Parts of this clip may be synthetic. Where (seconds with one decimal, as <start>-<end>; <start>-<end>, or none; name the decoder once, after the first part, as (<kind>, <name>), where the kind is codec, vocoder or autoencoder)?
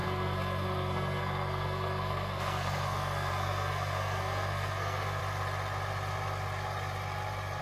0.0-5.2 (codec, SNAC)